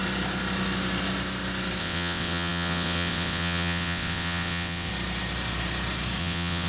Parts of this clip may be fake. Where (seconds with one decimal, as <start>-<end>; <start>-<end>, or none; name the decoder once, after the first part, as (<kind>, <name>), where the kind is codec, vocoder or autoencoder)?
1.8-4.9 (vocoder, WaveNeXt); 6.2-6.7